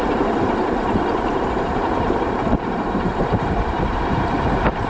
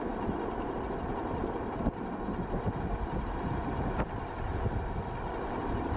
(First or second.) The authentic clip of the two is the second